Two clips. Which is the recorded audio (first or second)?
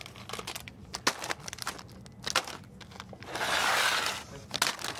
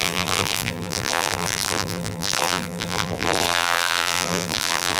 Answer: first